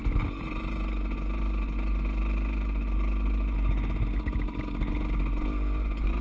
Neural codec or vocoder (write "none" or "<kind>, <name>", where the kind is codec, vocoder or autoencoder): none